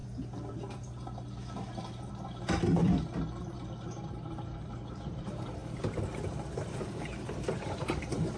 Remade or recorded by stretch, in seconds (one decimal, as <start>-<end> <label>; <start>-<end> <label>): 0.0-2.8 remade; 2.8-3.4 recorded; 3.4-8.4 remade